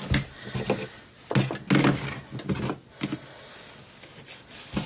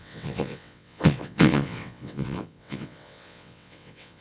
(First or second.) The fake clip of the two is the second